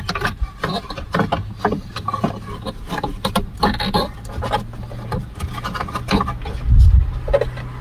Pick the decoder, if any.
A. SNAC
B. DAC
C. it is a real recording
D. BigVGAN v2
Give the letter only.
C